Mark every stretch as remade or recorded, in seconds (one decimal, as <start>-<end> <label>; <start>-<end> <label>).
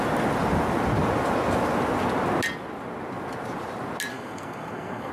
0.0-4.1 recorded; 4.1-5.1 remade